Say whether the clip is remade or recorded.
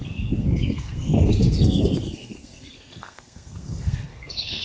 remade